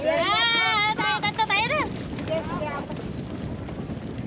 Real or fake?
real